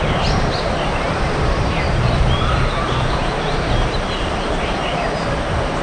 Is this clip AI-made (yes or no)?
yes